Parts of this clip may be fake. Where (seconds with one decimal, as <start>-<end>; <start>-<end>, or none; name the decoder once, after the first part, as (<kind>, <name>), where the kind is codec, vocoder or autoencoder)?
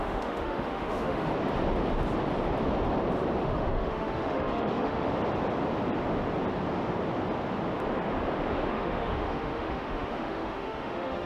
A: 0.0-1.3 (autoencoder, DAC-VAE); 3.4-5.1; 8.7-11.3